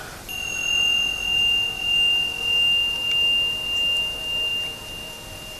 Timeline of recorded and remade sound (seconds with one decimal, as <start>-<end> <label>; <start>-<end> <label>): 0.0-5.6 recorded